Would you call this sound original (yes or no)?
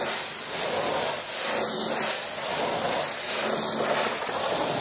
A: yes